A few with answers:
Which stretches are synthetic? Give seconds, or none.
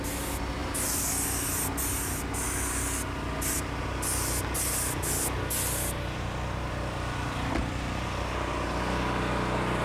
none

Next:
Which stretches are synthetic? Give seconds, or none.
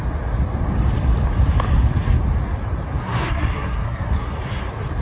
3.0-4.4 (codec, SNAC)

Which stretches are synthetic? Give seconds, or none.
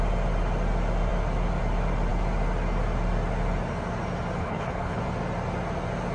4.4-5.0 (codec, HILCodec)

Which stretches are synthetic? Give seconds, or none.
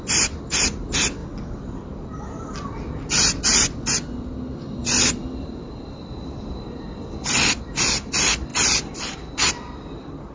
0.0-1.2 (vocoder, BigVGAN v2); 5.1-10.3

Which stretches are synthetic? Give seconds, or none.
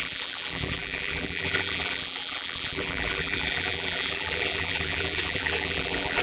0.0-6.2 (vocoder, BigVGAN v2)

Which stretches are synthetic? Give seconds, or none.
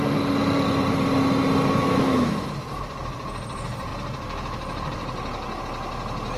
1.8-2.8 (autoencoder, DAC-VAE)